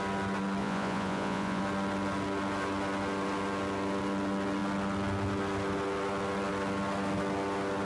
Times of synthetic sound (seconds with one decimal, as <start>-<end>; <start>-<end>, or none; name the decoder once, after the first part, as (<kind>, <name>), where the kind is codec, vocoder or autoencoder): 0.6-1.6 (vocoder, Vocos)

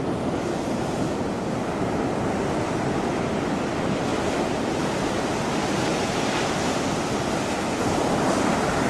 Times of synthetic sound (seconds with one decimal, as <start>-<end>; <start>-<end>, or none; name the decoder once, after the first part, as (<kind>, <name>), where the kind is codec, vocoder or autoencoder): none

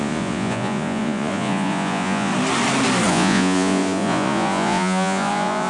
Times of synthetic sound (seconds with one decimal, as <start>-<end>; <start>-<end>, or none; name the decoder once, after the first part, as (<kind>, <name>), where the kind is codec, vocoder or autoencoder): 0.0-2.3 (vocoder, Vocos); 3.1-5.7

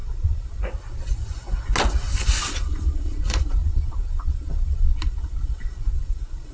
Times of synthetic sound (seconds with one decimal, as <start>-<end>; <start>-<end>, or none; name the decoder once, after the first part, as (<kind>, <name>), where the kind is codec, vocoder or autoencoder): 0.0-0.6 (vocoder, Vocos); 2.4-6.5

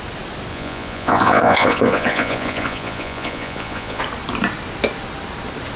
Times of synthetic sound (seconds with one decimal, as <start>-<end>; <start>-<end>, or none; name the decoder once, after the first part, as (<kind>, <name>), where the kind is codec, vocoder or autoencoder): 0.5-4.0 (vocoder, Vocos)

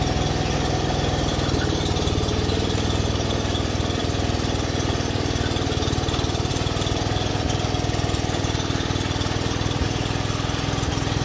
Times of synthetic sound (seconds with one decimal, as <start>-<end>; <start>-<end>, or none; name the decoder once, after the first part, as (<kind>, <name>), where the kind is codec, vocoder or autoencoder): none

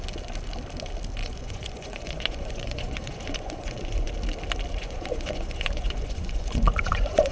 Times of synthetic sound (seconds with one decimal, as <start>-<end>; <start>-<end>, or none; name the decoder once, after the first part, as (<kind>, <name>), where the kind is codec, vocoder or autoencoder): 1.2-4.1 (vocoder, Vocos); 4.7-7.3

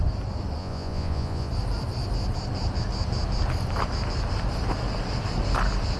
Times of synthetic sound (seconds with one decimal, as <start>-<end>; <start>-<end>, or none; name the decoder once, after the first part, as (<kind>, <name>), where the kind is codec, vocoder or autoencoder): 0.6-1.5 (vocoder, Vocos)